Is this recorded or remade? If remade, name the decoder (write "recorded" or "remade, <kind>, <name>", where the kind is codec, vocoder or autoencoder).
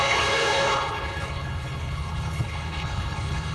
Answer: remade, codec, HILCodec